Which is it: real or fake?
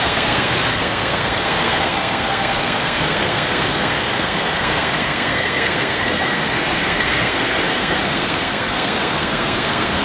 fake